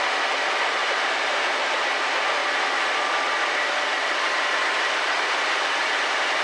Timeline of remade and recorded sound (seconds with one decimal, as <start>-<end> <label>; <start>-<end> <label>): 0.0-0.8 recorded; 0.8-1.5 remade; 1.5-6.4 recorded